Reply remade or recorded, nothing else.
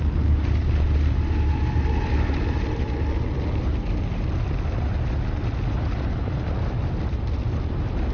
recorded